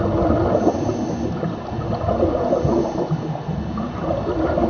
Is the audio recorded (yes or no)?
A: yes